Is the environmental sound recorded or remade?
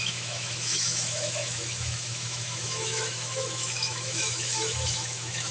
remade